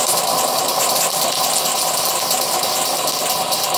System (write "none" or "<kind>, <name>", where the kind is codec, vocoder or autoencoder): none